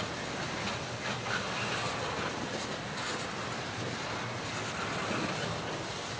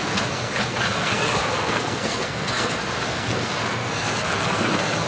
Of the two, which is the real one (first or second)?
first